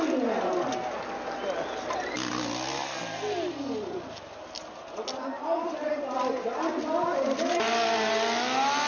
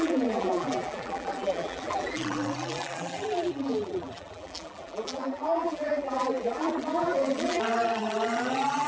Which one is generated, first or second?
second